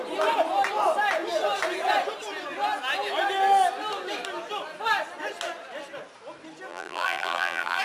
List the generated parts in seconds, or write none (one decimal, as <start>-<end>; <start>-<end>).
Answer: 6.7-7.8